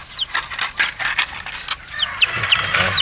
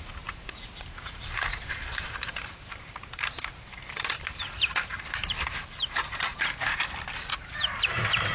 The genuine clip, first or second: first